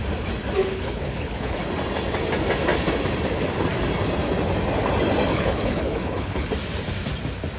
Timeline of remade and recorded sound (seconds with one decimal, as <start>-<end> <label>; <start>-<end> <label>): 0.0-0.6 recorded; 0.6-1.6 remade; 1.6-5.3 recorded; 5.3-6.5 remade; 6.5-7.6 recorded